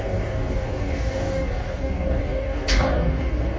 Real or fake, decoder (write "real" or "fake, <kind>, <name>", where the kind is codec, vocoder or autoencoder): fake, codec, DAC